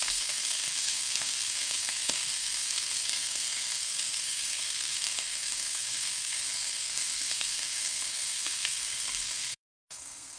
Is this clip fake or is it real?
fake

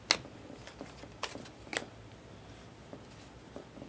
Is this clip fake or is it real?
real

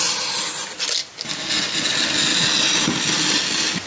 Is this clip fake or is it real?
real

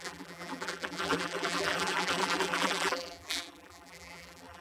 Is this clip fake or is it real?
fake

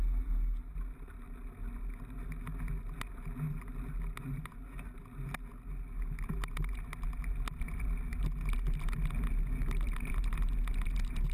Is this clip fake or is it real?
real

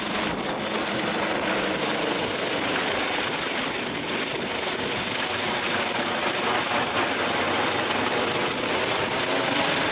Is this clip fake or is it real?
real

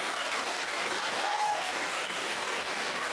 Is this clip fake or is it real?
fake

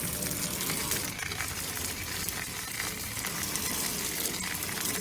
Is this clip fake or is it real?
real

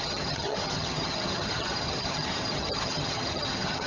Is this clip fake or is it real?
fake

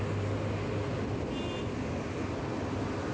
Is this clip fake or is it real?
real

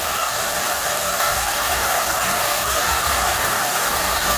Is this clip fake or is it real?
fake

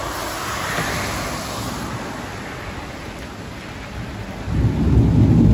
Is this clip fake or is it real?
real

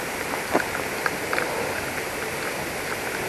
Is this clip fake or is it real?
real